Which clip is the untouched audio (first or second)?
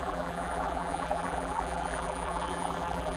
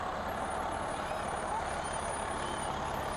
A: second